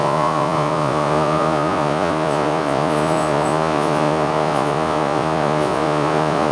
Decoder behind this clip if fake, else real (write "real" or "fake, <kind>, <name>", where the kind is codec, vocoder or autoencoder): fake, vocoder, Vocos